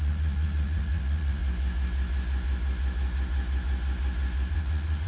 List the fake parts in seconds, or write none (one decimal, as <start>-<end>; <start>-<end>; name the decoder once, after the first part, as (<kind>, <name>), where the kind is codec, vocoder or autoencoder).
0.0-1.4 (vocoder, Vocos); 4.5-5.1

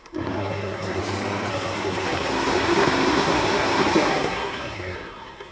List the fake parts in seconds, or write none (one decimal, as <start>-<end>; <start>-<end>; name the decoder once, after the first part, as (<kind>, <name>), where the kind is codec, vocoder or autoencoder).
0.0-1.0 (codec, SNAC); 1.5-5.5

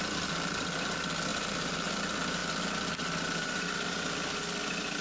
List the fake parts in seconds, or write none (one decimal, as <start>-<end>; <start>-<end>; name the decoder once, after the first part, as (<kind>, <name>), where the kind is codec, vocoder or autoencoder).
none

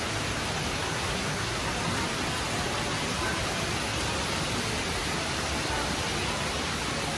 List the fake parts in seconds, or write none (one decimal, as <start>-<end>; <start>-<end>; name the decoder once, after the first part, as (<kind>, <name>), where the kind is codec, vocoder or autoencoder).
0.8-1.6 (codec, SNAC)

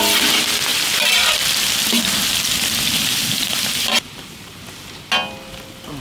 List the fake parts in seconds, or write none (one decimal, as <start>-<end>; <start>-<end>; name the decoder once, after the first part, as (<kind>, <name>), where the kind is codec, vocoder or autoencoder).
0.7-4.2 (vocoder, BigVGAN v2)